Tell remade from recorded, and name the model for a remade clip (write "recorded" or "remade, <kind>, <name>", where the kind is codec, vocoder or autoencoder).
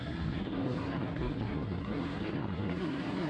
remade, codec, SNAC